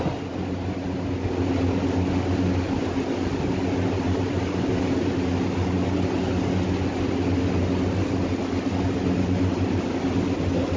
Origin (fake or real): real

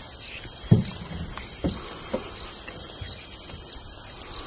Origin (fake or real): real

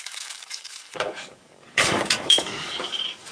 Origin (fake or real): fake